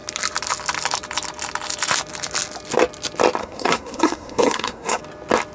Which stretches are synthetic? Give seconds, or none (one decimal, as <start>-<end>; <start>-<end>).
3.4-5.0